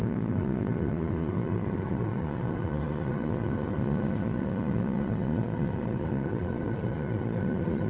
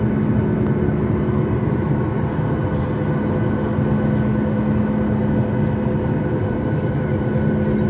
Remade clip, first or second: first